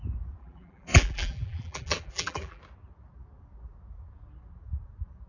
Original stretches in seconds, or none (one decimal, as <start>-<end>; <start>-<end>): 0.0-0.4; 2.6-5.3